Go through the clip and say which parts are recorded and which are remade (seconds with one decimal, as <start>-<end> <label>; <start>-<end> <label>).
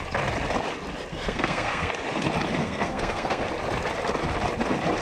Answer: 0.0-1.1 recorded; 1.1-1.9 remade; 1.9-2.6 recorded; 2.6-3.4 remade; 3.4-5.0 recorded